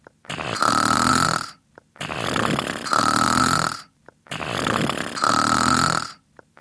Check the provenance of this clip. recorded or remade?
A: recorded